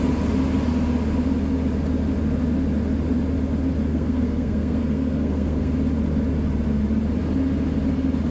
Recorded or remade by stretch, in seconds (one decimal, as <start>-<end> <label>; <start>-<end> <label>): 0.0-3.9 recorded; 3.9-5.7 remade; 5.7-8.3 recorded